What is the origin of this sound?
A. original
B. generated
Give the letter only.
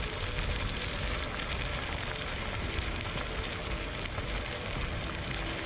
A